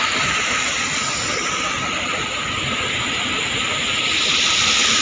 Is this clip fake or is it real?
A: real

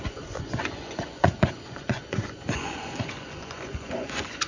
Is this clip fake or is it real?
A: fake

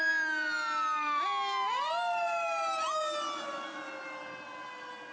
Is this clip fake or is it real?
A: real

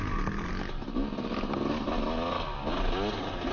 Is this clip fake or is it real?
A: real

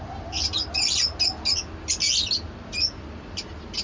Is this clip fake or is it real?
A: real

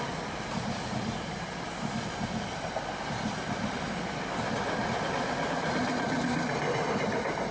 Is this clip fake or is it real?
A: real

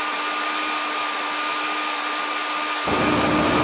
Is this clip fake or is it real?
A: real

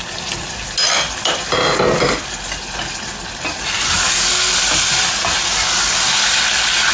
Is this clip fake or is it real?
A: real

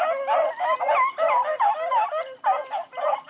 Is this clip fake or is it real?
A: real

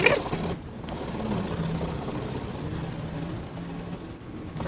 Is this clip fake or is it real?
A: real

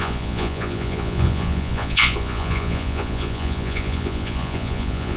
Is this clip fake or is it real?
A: fake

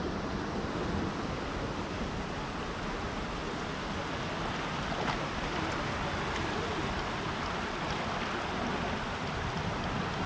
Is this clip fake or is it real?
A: real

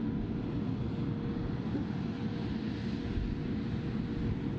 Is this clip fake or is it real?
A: real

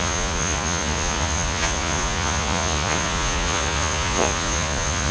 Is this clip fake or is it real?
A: fake